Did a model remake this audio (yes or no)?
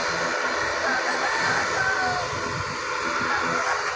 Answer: no